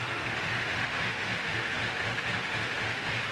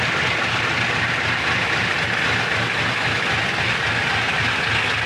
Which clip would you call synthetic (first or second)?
first